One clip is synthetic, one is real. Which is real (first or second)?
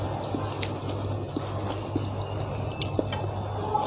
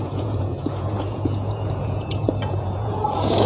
first